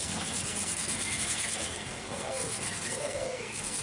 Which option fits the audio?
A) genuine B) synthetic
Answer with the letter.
B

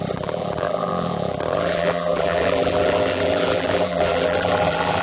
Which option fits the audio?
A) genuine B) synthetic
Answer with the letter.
B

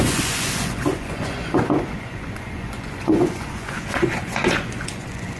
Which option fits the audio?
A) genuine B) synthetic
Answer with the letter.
B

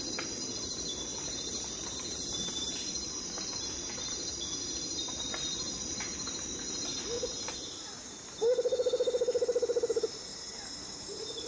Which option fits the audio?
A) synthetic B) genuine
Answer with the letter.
A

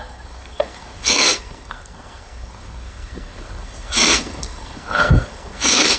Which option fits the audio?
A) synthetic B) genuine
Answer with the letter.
A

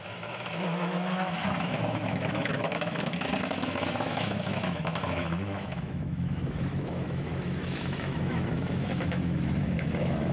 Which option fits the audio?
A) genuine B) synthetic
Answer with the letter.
B